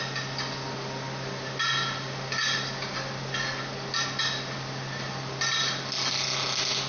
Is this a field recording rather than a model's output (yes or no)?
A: yes